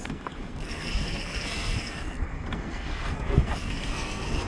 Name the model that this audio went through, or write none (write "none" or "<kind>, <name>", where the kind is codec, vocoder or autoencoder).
codec, SNAC